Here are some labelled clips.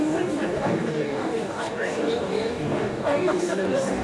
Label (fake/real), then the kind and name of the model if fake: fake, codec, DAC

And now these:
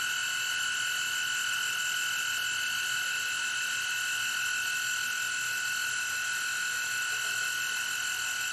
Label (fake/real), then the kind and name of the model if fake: real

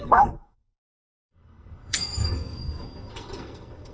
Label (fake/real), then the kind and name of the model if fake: fake, codec, SNAC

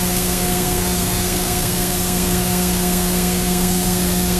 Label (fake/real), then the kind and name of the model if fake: fake, codec, SNAC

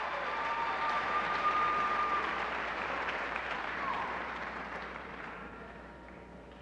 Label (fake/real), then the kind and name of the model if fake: fake, vocoder, BigVGAN v2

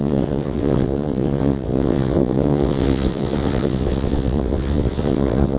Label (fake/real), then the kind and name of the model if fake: fake, vocoder, WaveNeXt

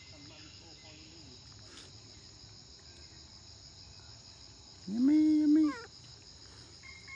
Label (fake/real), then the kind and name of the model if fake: real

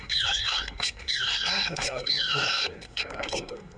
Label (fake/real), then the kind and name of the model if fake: fake, codec, SNAC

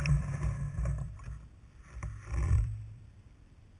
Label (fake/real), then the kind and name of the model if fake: fake, vocoder, BigVGAN v2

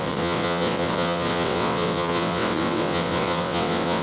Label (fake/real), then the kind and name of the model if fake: fake, vocoder, WaveNeXt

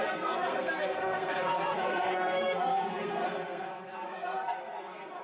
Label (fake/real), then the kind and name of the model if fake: fake, codec, SNAC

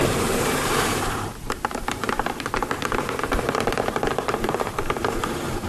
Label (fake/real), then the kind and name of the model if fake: fake, vocoder, BigVGAN v2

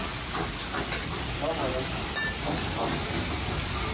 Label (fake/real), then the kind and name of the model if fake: real